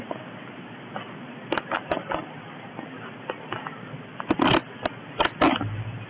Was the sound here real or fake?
real